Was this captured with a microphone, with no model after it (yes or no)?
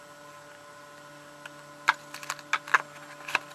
yes